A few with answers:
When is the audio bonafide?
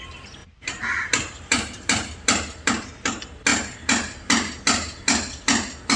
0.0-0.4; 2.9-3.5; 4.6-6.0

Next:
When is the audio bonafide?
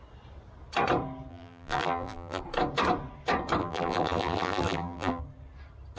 0.0-1.3; 2.4-3.6; 5.2-6.0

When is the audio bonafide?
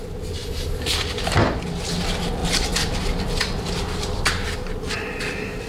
0.0-0.4; 0.9-1.4; 2.0-2.4; 4.2-5.7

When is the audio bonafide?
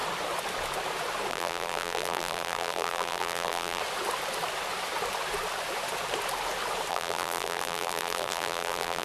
0.0-1.3; 3.8-6.9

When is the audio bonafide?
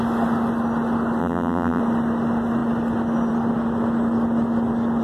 0.0-1.2; 1.8-5.0